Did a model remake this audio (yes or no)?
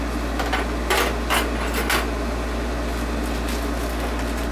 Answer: no